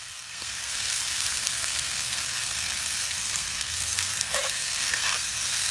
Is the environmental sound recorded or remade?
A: remade